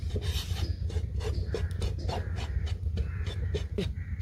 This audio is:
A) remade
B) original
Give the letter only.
B